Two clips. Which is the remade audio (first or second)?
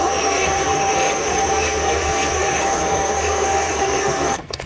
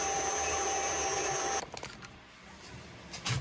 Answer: first